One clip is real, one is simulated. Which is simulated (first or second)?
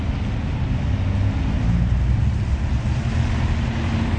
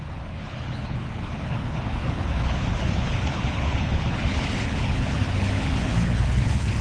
second